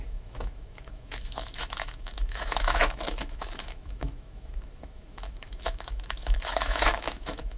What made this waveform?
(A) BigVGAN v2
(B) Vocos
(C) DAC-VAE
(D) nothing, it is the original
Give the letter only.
C